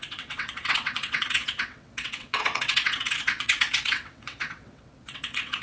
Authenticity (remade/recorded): remade